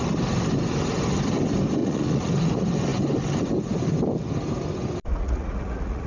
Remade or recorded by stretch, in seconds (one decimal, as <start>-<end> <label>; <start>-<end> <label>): 0.0-1.8 recorded; 1.8-2.3 remade; 2.3-5.1 recorded; 5.1-6.1 remade